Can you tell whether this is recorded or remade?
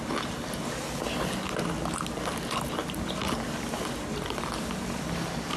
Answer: recorded